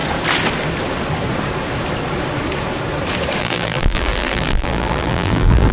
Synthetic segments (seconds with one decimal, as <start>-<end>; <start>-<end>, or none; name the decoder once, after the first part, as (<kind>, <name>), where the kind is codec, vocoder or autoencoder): 3.4-5.7 (vocoder, BigVGAN v2)